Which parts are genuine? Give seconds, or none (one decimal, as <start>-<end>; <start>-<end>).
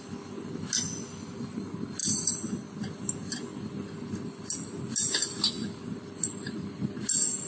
0.0-7.5